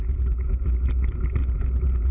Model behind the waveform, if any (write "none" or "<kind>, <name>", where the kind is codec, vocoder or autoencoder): none